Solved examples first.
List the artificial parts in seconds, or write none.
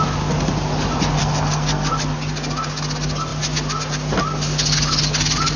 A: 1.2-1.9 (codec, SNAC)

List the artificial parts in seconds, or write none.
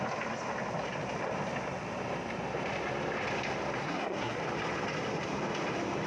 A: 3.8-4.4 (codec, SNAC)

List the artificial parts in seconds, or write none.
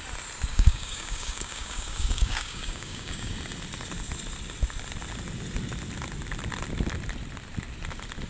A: 0.5-3.3 (codec, DAC)